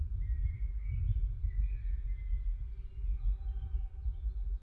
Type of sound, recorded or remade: recorded